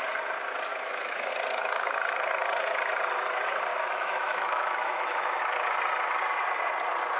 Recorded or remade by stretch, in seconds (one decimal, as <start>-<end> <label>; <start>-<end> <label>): 0.0-0.7 recorded; 0.7-1.3 remade; 1.3-3.7 recorded; 3.7-5.4 remade; 5.4-7.2 recorded